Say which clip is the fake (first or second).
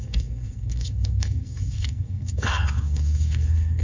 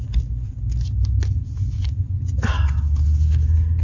first